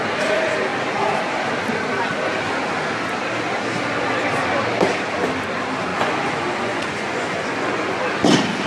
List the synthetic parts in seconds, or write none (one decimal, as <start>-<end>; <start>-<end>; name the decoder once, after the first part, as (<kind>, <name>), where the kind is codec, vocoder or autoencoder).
5.9-8.0 (vocoder, Vocos)